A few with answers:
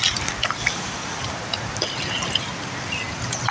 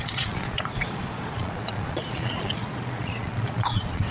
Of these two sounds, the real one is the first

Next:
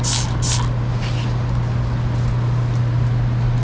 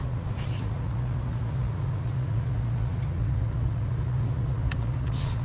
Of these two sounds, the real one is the first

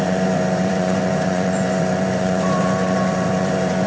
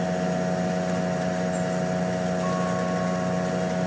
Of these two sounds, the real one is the second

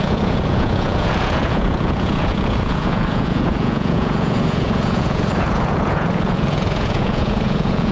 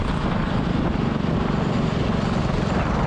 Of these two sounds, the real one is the second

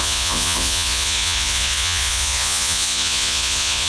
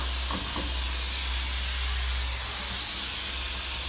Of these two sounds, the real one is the second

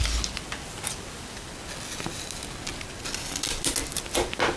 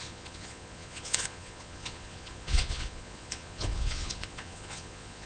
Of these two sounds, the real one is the first